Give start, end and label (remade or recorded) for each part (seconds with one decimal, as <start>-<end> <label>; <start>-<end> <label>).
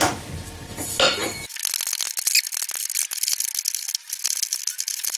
0.0-5.2 recorded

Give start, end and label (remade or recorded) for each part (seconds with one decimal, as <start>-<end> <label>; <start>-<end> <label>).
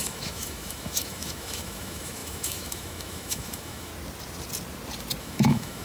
0.0-3.9 remade; 3.9-5.2 recorded; 5.2-5.8 remade